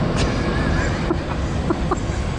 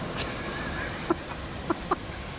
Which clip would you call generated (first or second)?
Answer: second